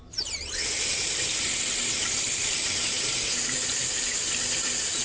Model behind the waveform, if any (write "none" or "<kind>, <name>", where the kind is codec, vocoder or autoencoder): none